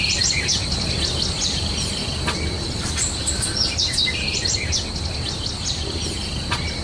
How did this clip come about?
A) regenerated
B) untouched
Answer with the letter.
B